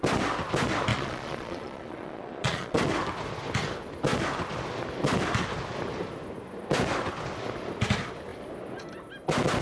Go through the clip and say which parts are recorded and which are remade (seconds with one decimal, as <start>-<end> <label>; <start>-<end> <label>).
0.0-0.9 recorded; 0.9-2.8 remade; 2.8-9.6 recorded